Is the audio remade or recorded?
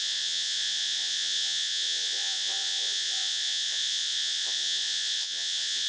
remade